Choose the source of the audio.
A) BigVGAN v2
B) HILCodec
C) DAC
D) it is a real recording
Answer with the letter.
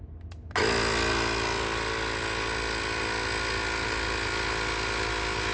D